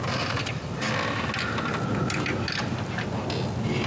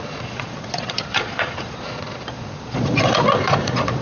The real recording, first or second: first